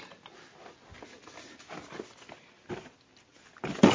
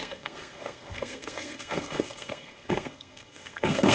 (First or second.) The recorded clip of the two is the first